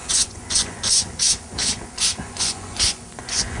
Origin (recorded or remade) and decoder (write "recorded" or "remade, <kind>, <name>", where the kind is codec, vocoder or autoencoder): remade, vocoder, Vocos